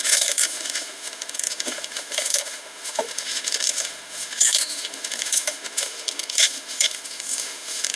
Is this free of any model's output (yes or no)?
no